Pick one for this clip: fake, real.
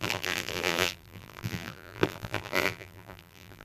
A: fake